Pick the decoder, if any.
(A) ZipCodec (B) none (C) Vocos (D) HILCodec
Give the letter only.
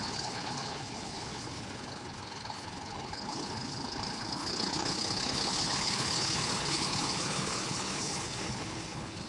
D